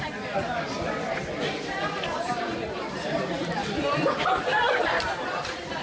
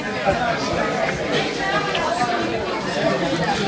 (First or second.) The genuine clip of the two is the second